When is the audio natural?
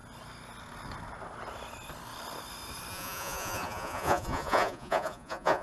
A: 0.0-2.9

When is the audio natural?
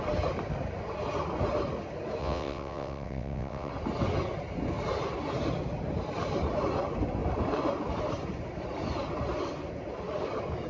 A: 0.0-2.2; 3.7-10.7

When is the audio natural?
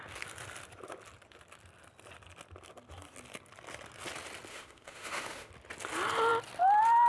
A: 0.0-4.5; 5.5-7.1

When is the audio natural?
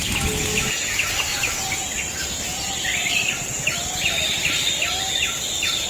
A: 0.0-1.3; 4.7-5.9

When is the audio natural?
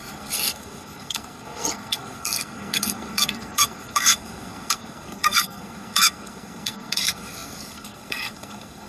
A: none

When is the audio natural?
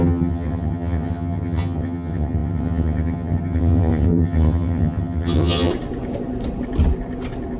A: 5.7-7.6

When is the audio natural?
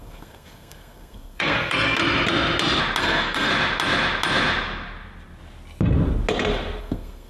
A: 2.0-3.0; 3.5-6.8